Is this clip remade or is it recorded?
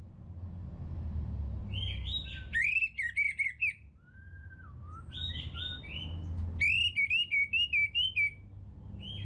recorded